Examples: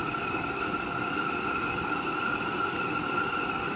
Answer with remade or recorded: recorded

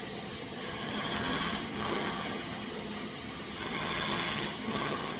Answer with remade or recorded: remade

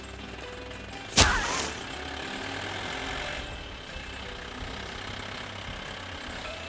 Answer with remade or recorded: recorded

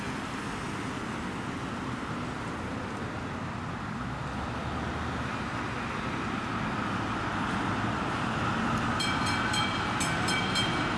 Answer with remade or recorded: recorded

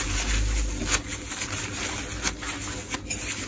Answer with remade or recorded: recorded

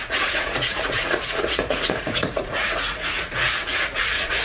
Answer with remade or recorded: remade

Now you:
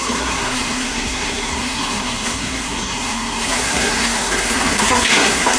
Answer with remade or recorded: remade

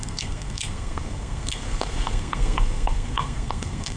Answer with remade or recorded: remade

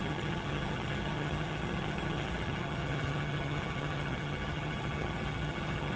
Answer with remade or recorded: remade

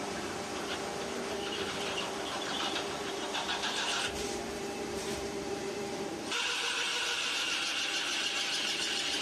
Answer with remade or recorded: remade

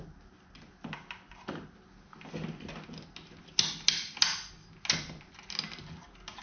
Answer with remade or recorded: recorded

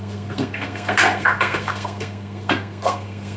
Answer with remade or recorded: remade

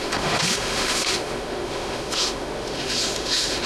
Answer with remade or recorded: remade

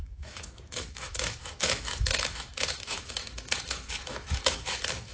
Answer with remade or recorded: remade